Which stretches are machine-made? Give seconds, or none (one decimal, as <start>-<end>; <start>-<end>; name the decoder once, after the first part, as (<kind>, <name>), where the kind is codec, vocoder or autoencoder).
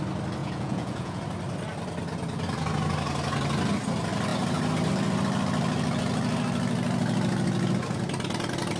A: 0.4-1.2 (vocoder, Vocos)